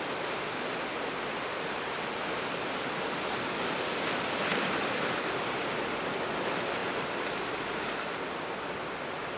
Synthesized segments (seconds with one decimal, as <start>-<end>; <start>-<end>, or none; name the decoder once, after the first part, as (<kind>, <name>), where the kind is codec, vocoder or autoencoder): 1.5-2.6 (vocoder, BigVGAN v2)